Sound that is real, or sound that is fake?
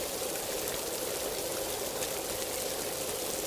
real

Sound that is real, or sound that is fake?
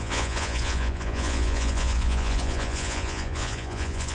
fake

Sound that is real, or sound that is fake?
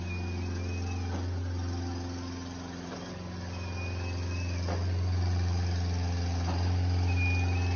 real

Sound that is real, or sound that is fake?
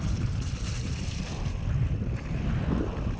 real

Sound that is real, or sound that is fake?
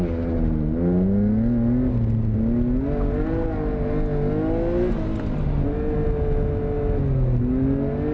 real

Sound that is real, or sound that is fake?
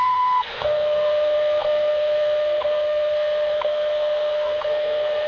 fake